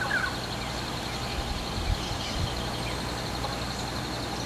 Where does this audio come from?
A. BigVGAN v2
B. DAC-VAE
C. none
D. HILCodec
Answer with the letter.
C